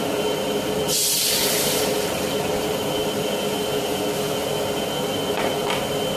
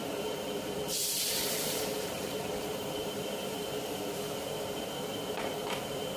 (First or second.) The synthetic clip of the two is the second